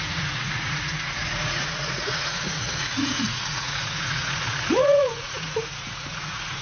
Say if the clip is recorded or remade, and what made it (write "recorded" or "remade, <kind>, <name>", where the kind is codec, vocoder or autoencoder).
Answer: remade, vocoder, Vocos